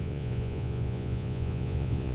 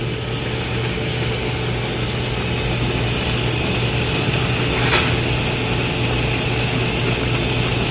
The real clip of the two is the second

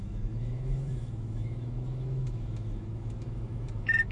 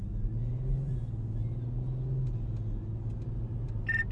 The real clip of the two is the second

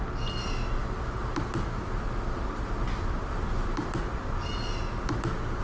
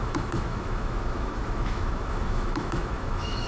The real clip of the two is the first